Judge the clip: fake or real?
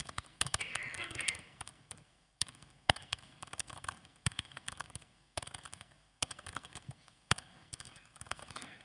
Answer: fake